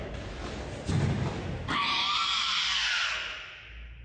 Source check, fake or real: real